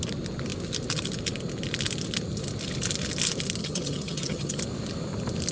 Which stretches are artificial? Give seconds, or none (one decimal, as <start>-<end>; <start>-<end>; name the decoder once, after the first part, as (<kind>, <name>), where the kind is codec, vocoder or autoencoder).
3.6-4.6 (vocoder, HiFi-GAN)

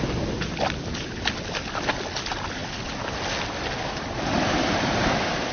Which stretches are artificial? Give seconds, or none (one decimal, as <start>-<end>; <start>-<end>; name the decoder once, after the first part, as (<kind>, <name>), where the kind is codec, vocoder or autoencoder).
none

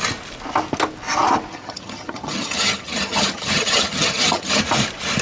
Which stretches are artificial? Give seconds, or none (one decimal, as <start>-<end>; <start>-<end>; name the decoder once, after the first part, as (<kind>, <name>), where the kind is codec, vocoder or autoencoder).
1.5-4.6 (vocoder, HiFi-GAN)

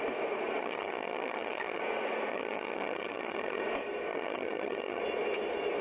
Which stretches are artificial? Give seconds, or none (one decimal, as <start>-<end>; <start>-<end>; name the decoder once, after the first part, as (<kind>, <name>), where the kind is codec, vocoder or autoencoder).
0.6-1.8 (vocoder, HiFi-GAN); 2.3-3.6; 4.1-5.0